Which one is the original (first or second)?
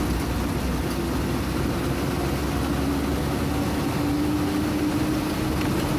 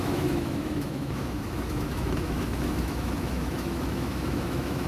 first